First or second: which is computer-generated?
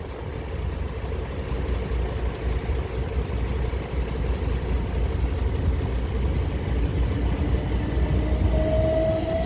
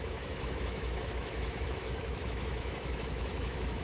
second